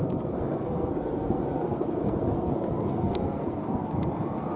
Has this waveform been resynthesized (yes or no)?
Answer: yes